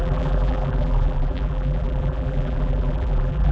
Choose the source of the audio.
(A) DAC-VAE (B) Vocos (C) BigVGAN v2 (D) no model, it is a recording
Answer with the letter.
C